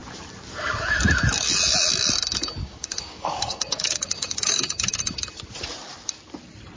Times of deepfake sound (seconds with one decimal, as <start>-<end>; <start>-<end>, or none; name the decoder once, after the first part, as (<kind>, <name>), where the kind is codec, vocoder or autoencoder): 2.6-4.9 (codec, DAC)